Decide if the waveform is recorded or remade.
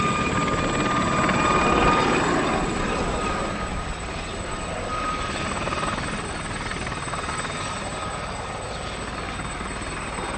recorded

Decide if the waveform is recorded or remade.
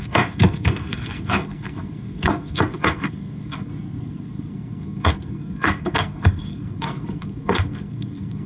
remade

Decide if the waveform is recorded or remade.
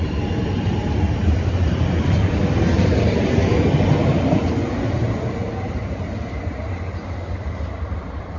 remade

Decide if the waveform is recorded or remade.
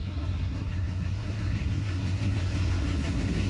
remade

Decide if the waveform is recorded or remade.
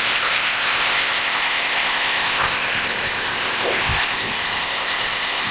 remade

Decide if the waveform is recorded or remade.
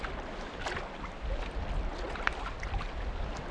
recorded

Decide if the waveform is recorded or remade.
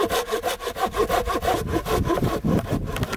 recorded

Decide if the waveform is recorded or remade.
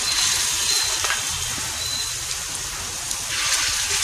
recorded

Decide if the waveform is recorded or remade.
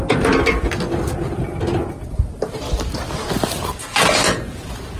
recorded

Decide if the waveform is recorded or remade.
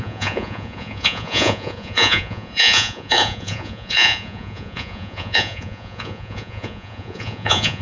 remade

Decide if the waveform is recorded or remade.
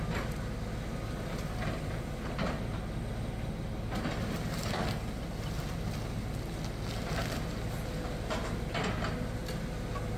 recorded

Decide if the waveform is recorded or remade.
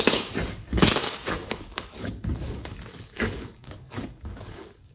remade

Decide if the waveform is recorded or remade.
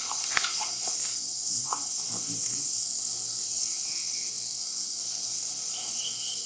remade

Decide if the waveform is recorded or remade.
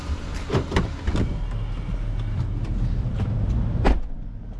recorded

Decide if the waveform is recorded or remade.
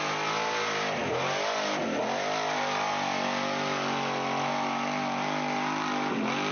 recorded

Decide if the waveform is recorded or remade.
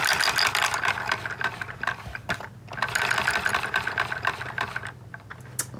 recorded